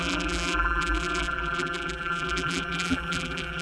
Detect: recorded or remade remade